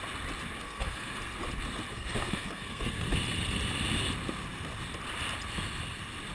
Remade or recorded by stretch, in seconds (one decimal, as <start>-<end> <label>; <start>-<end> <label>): 0.0-0.6 recorded; 0.6-1.2 remade; 1.2-1.9 recorded; 1.9-3.1 remade; 3.1-6.3 recorded